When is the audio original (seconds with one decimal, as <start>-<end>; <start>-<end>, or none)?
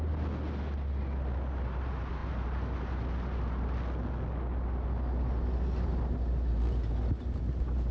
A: 0.0-7.9